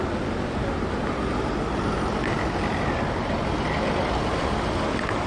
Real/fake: real